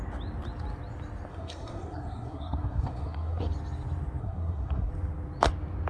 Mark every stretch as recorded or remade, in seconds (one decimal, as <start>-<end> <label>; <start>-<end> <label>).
0.0-1.3 recorded; 1.3-3.4 remade; 3.4-4.2 recorded; 4.2-4.9 remade; 4.9-5.9 recorded